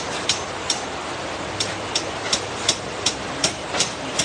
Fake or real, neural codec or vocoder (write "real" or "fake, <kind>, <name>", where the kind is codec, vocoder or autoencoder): real